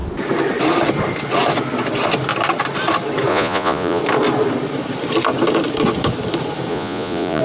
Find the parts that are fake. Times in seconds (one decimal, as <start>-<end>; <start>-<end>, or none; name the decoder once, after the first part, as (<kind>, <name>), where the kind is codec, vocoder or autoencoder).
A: 3.3-4.0 (vocoder, Vocos); 6.7-7.4

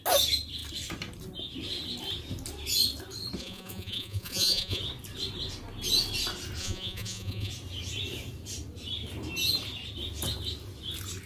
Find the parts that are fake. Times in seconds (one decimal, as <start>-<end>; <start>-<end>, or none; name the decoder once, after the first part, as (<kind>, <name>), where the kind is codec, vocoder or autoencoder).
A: 3.4-4.8 (vocoder, Vocos); 6.6-7.5

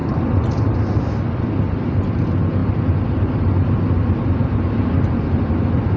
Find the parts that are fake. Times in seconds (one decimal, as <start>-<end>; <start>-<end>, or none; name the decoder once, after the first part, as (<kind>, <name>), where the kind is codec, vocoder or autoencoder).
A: none